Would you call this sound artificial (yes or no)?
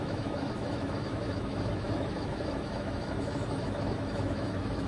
yes